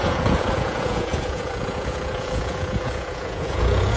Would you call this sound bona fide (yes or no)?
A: no